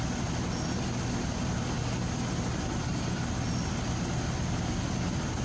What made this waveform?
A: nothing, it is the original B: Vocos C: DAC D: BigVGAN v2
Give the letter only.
A